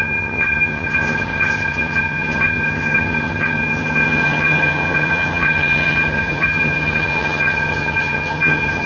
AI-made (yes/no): yes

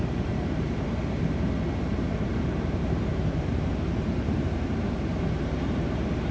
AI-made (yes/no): yes